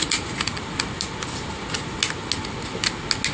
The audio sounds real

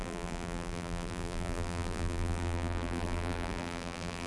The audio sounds fake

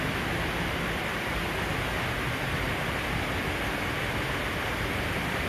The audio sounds real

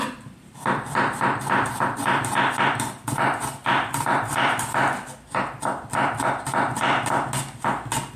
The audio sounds real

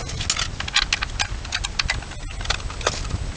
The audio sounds real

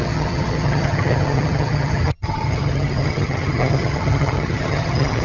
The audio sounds fake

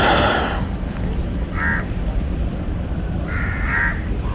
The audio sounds real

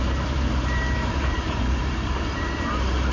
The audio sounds fake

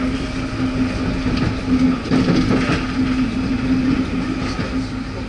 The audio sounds real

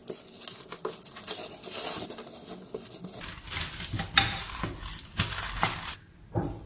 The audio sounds real